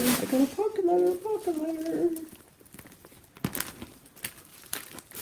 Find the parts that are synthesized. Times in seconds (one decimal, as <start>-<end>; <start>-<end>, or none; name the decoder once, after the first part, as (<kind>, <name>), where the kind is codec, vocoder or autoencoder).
1.6-2.6 (vocoder, BigVGAN v2); 4.5-5.2